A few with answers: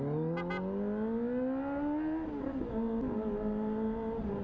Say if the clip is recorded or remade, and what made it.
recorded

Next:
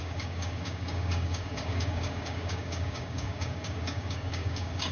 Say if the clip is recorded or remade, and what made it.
remade, codec, DAC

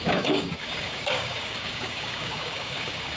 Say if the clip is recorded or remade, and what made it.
remade, codec, DAC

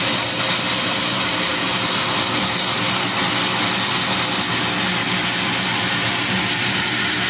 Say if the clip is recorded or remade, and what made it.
recorded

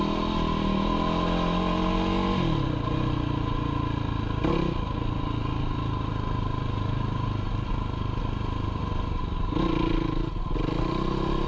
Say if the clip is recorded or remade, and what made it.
recorded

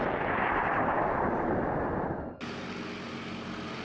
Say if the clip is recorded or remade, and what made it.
recorded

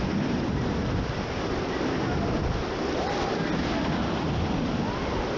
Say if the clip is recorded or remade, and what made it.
recorded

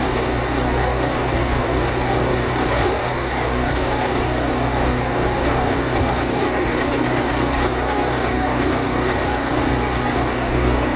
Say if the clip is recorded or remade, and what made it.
remade, codec, DAC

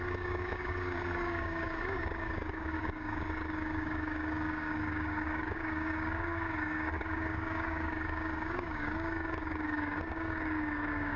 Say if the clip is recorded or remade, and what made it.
remade, codec, DAC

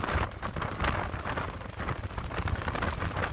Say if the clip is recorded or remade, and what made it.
recorded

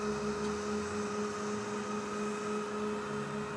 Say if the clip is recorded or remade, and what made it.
recorded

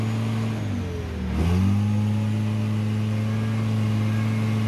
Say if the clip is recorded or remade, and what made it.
recorded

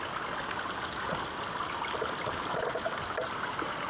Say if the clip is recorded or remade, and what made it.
recorded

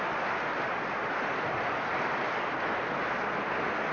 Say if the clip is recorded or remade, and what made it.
recorded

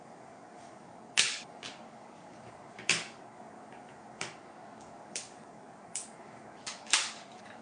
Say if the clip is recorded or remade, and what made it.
remade, codec, DAC